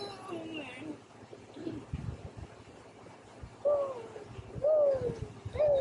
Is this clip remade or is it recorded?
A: recorded